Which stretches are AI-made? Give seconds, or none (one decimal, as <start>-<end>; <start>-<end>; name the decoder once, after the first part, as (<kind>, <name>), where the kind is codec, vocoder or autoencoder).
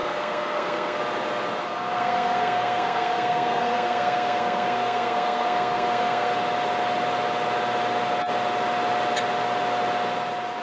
0.0-1.0 (codec, SNAC); 1.6-6.3